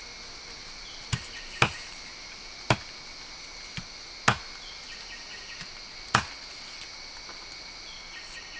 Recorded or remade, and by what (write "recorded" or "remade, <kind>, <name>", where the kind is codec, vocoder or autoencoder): recorded